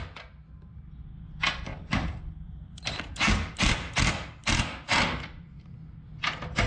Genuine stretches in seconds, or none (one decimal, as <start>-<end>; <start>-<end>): 0.0-6.7